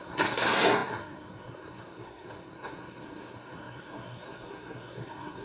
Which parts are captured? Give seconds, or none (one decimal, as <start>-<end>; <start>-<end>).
none